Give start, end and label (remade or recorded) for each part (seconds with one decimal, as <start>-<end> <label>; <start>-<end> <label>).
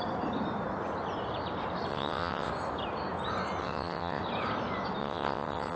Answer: 0.0-1.9 recorded; 1.9-2.5 remade; 2.5-3.6 recorded; 3.6-4.2 remade; 4.2-5.0 recorded; 5.0-5.8 remade